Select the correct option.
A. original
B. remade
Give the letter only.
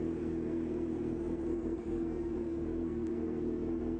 B